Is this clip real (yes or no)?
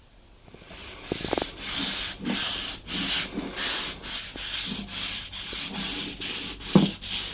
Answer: yes